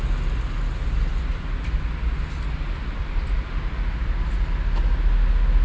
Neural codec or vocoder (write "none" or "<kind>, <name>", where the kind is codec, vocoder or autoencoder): none